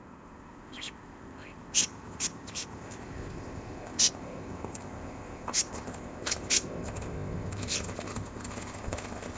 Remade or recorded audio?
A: remade